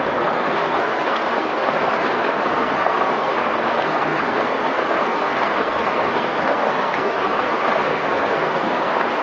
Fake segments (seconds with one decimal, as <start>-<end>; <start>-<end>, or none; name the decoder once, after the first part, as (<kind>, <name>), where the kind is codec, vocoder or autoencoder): 0.0-9.2 (codec, SNAC)